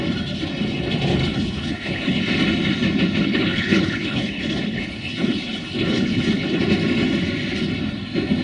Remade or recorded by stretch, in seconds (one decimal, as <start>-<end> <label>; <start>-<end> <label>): 0.0-1.2 recorded; 1.2-2.2 remade; 2.2-3.2 recorded; 3.2-6.6 remade; 6.6-8.4 recorded